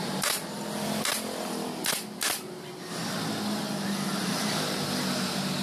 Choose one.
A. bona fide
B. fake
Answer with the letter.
A